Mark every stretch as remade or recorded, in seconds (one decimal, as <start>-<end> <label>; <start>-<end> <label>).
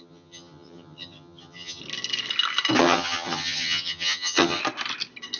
0.0-1.8 remade; 1.8-2.8 recorded; 2.8-4.6 remade; 4.6-5.4 recorded